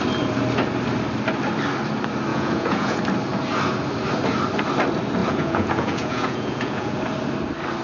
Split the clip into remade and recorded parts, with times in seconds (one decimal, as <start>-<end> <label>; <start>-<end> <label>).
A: 0.0-2.3 recorded; 2.3-3.0 remade; 3.0-5.2 recorded; 5.2-7.0 remade; 7.0-7.8 recorded